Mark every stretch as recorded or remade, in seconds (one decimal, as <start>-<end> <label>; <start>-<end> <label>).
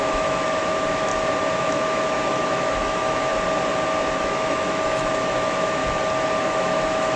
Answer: 0.0-1.1 remade; 1.1-1.6 recorded; 1.6-3.3 remade; 3.3-4.2 recorded; 4.2-5.8 remade; 5.8-6.4 recorded; 6.4-7.2 remade